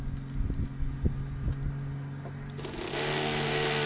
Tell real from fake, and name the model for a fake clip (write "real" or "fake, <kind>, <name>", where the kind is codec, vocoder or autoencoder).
real